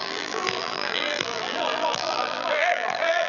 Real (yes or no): no